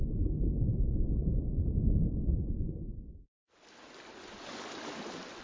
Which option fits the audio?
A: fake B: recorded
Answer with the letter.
B